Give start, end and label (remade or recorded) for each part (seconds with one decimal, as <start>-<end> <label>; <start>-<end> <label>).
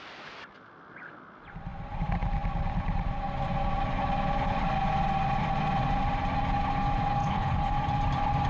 0.0-7.2 recorded; 7.2-7.7 remade; 7.7-8.5 recorded